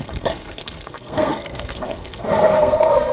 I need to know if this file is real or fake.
fake